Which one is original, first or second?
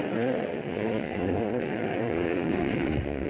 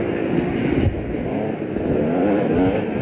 second